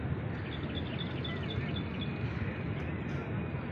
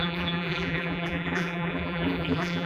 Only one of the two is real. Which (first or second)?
first